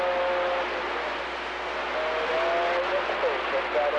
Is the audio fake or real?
real